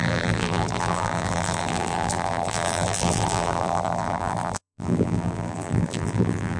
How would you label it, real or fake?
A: fake